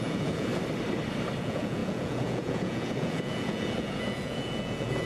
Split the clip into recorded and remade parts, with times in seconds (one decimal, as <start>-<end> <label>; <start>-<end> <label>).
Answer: 0.0-0.5 remade; 0.5-1.4 recorded; 1.4-5.1 remade